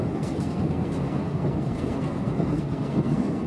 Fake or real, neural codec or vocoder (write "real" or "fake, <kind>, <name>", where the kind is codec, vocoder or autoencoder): fake, codec, SNAC